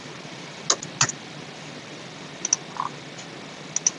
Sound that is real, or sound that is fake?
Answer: real